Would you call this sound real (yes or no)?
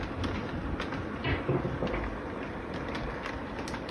yes